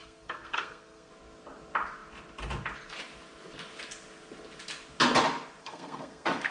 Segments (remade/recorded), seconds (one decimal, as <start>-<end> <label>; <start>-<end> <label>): 0.0-1.1 remade; 1.1-5.6 recorded; 5.6-6.5 remade